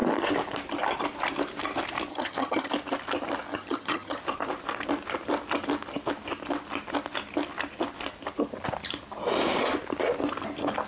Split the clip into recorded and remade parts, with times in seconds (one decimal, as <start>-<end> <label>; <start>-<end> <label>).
0.0-2.1 recorded; 2.1-2.7 remade; 2.7-3.5 recorded; 3.5-4.2 remade; 4.2-10.9 recorded